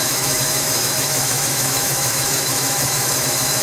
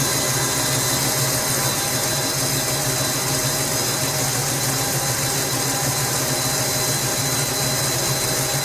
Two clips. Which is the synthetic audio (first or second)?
first